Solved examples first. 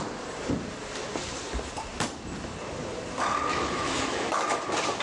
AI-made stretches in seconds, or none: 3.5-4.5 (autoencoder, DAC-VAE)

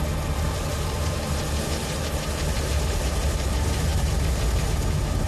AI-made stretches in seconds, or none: none

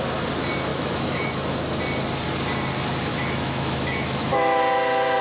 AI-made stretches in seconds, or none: 0.7-1.8 (autoencoder, DAC-VAE); 3.1-4.6

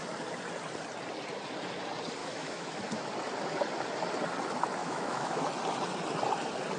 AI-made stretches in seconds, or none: 2.2-2.8 (autoencoder, DAC-VAE); 4.8-5.4